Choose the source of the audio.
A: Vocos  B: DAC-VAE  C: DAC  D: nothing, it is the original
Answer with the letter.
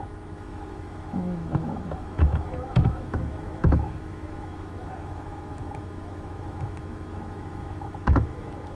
B